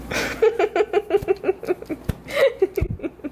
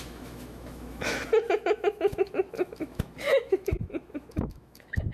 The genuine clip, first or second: first